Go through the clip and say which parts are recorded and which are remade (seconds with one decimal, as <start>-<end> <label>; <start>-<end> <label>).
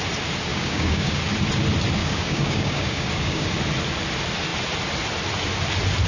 0.0-0.5 recorded; 0.5-1.2 remade; 1.2-2.0 recorded; 2.0-3.5 remade; 3.5-6.1 recorded